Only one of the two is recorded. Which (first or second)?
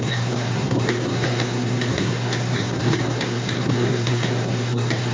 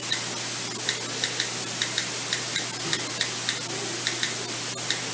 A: second